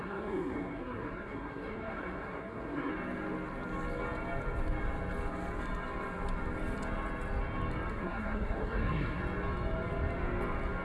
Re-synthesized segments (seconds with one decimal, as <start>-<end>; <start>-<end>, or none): 0.0-2.9; 7.9-9.2